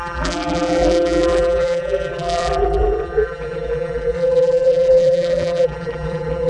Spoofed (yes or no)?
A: yes